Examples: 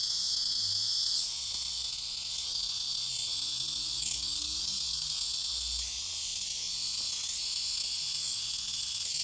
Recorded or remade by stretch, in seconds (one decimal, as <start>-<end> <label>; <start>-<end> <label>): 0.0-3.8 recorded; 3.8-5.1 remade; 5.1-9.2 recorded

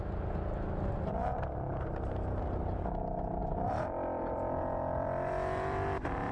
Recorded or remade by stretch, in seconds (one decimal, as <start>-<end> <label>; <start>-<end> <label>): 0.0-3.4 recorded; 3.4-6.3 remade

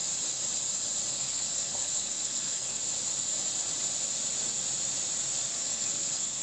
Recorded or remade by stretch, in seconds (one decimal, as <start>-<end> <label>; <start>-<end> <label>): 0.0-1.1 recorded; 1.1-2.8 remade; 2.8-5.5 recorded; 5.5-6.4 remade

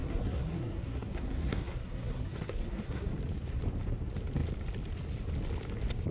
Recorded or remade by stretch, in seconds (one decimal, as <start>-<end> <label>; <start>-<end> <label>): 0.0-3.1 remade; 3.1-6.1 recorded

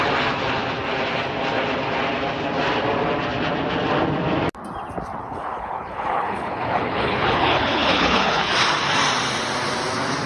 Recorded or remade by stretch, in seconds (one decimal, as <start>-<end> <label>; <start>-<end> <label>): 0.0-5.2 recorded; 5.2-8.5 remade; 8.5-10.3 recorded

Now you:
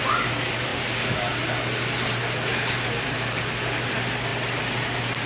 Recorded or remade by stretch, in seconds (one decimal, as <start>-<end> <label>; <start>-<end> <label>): 0.0-5.3 recorded

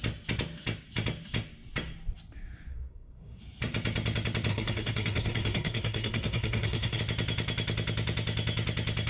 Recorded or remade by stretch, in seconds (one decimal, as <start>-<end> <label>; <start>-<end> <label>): 0.0-2.7 recorded; 2.7-3.4 remade; 3.4-4.5 recorded; 4.5-7.0 remade; 7.0-9.1 recorded